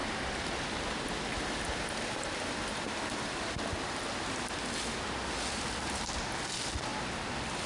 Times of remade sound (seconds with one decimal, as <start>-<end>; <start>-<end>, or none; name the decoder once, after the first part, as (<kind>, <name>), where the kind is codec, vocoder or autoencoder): none